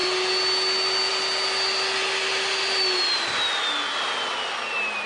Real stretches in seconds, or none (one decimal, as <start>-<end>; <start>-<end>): 0.0-5.1